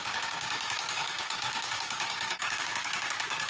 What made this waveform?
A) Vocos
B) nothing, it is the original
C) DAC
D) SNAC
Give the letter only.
C